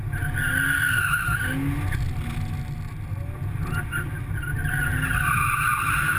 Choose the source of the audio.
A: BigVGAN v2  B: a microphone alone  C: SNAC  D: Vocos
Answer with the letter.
B